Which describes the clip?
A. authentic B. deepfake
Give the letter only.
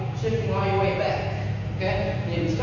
A